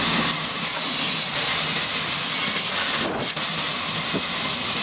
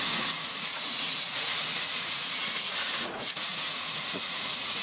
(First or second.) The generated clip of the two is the second